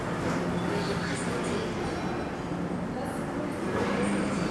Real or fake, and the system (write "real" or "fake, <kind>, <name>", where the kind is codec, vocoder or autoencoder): real